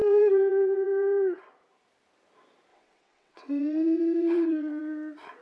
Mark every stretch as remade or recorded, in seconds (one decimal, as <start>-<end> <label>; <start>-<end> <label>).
0.0-1.4 remade; 1.4-2.7 recorded; 2.7-4.8 remade; 4.8-5.4 recorded